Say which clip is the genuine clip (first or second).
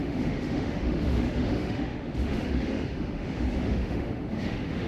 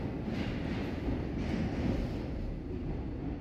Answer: second